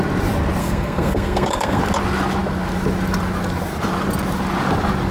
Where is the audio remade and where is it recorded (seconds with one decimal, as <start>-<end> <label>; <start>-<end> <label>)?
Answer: 0.0-0.6 recorded; 0.6-1.8 remade; 1.8-5.1 recorded